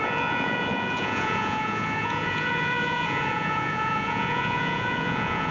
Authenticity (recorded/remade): remade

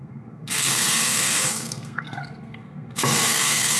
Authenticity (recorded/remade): remade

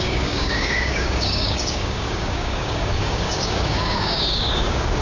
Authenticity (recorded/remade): remade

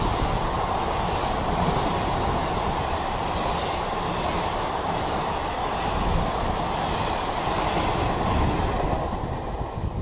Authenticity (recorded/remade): recorded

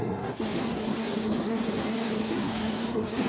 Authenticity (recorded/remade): remade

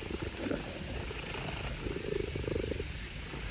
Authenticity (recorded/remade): recorded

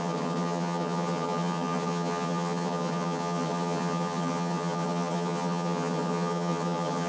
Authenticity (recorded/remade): remade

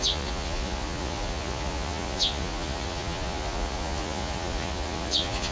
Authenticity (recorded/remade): remade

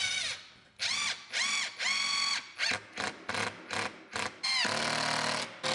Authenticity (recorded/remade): recorded